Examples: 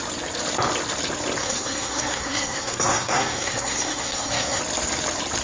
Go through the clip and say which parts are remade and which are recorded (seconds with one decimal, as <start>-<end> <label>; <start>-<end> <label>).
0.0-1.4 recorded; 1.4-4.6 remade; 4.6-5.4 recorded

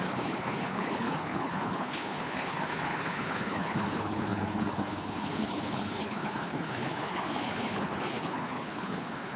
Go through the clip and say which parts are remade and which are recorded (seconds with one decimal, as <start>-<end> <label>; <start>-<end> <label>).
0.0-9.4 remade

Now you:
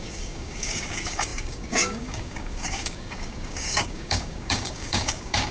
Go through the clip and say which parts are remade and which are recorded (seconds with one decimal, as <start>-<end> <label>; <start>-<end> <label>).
0.0-5.5 remade